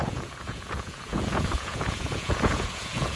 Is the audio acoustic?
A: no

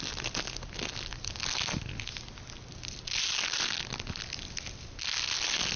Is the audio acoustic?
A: yes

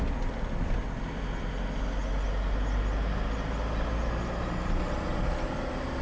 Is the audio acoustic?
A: yes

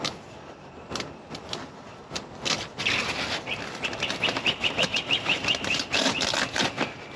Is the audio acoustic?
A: yes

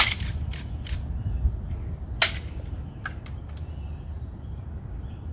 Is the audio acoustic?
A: yes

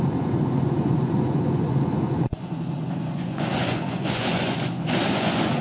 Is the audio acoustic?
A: no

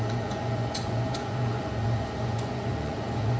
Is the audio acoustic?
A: no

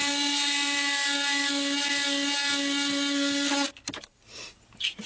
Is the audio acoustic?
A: yes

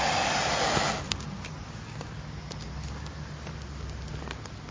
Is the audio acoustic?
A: yes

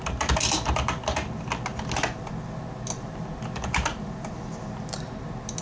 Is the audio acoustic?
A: yes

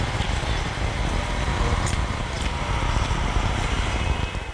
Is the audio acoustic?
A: yes